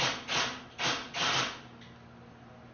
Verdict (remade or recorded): recorded